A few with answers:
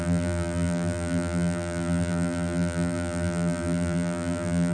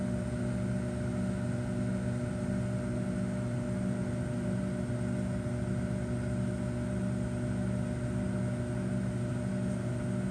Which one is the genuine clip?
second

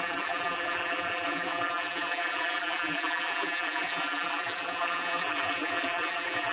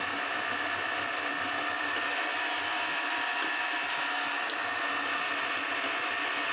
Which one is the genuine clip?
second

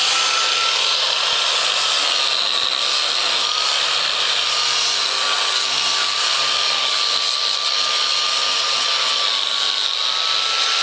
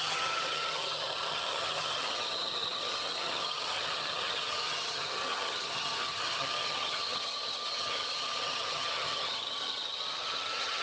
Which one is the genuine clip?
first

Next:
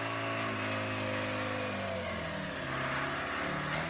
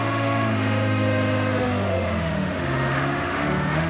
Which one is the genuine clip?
first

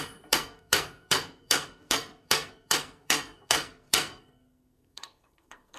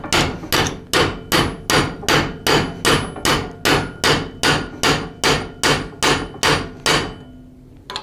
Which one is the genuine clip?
second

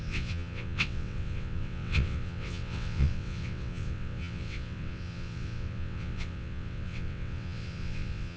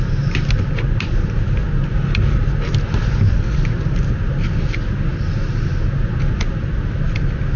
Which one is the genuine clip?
second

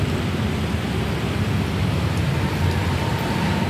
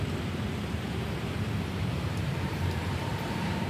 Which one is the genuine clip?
first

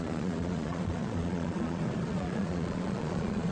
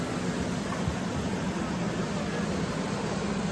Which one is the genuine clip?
second